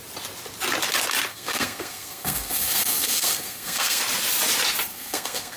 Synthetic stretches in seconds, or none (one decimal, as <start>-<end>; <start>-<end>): 1.3-4.0; 4.9-5.6